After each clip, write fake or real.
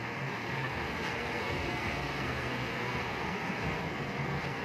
fake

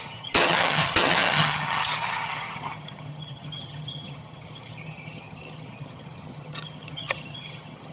fake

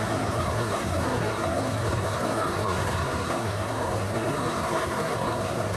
fake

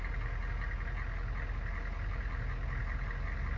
real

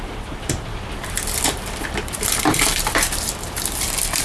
fake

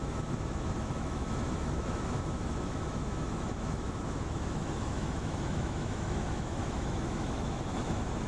fake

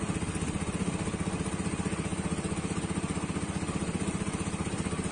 real